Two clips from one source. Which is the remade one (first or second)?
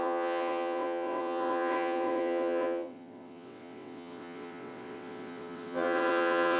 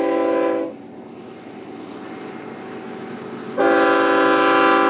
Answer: first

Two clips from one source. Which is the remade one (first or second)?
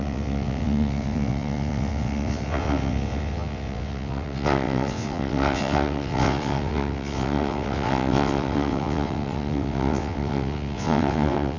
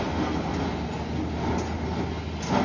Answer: first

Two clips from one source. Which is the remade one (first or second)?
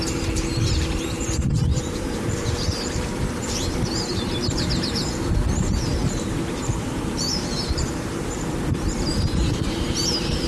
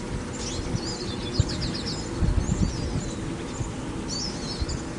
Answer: first